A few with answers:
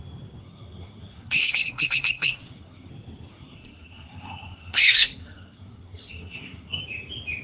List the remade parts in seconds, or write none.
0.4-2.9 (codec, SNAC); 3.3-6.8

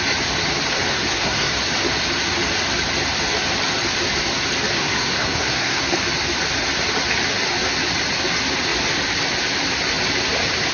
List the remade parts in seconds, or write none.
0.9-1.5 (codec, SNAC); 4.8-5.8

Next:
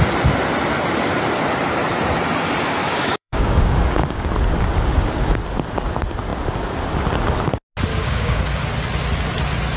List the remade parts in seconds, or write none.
2.8-4.3 (codec, DAC); 7.9-8.4

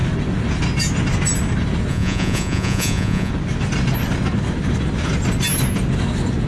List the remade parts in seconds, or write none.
1.9-3.3 (vocoder, Vocos)